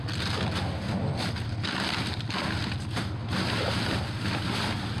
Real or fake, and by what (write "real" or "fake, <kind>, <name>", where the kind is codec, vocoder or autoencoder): real